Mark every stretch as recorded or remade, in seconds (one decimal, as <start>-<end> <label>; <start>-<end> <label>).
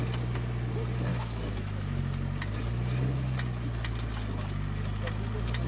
0.0-1.1 recorded; 1.1-2.0 remade; 2.0-5.7 recorded